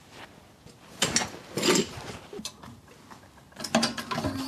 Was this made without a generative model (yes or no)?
yes